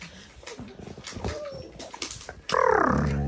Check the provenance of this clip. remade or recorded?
recorded